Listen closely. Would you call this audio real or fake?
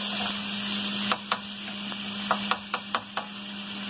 real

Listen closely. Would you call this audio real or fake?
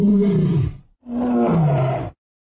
real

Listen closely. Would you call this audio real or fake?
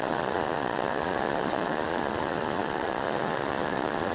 fake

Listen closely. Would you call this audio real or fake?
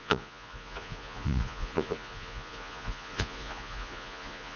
fake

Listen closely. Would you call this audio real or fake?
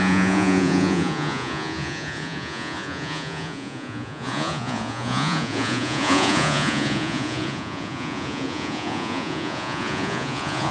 fake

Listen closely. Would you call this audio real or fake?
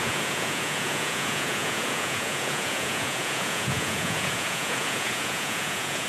fake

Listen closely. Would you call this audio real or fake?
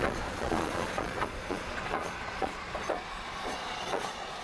fake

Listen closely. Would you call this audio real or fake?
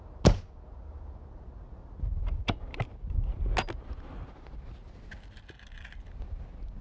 real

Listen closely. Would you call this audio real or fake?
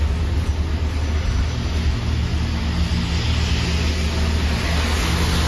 real